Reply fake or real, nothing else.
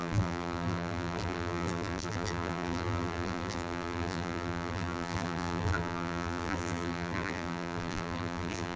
fake